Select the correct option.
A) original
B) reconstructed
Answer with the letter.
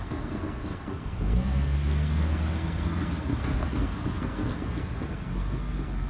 B